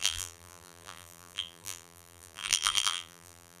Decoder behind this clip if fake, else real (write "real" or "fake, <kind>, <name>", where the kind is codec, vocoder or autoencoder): fake, vocoder, BigVGAN v2